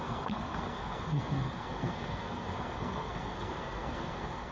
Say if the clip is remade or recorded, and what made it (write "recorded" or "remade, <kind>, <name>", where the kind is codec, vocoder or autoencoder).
remade, codec, SNAC